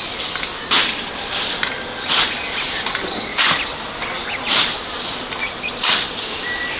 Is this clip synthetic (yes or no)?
no